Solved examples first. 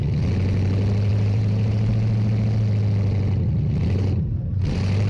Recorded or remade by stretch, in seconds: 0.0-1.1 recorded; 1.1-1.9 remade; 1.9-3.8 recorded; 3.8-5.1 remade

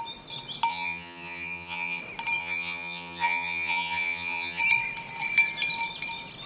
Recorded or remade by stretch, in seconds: 0.0-0.7 recorded; 0.7-2.0 remade; 2.0-2.4 recorded; 2.4-4.6 remade; 4.6-6.5 recorded

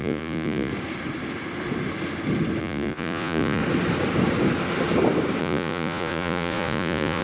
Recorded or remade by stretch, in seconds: 0.0-0.7 remade; 0.7-2.6 recorded; 2.6-3.6 remade; 3.6-5.4 recorded; 5.4-7.2 remade

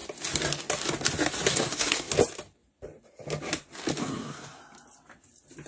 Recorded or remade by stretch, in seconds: 0.0-1.5 recorded; 1.5-2.1 remade; 2.1-4.0 recorded; 4.0-4.6 remade; 4.6-5.7 recorded

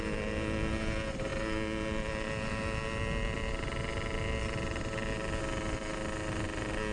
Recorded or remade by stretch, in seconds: 0.0-6.9 recorded